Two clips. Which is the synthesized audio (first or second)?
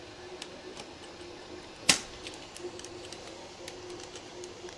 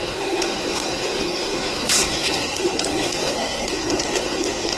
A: second